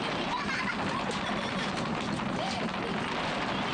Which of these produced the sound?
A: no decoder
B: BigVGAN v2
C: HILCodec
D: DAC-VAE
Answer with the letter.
A